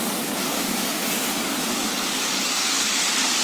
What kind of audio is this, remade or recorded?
remade